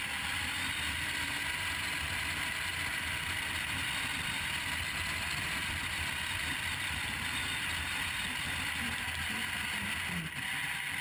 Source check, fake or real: real